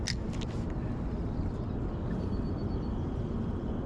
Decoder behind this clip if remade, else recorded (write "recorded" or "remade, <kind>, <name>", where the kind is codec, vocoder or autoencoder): recorded